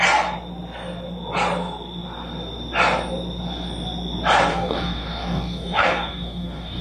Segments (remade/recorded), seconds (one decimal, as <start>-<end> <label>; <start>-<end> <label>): 0.0-4.5 recorded; 4.5-6.8 remade